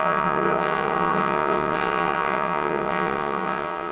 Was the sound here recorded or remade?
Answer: remade